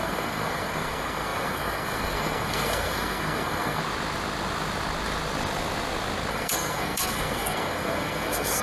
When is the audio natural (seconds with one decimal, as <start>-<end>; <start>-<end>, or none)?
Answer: 3.8-6.3